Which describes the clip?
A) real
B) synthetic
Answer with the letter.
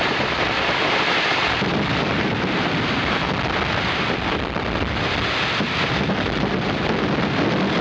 B